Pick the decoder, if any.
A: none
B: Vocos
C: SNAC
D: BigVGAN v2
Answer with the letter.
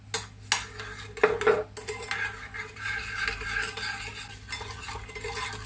A